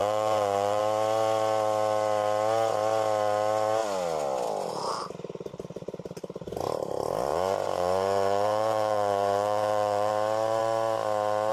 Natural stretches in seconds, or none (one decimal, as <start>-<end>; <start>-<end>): 0.8-7.3; 10.1-11.5